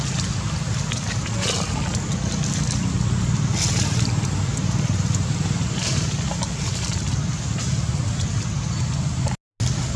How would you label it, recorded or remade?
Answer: recorded